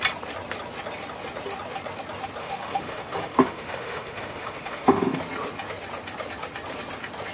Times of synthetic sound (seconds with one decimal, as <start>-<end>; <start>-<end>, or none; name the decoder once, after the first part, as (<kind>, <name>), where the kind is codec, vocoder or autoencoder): 2.4-5.2 (autoencoder, DAC-VAE)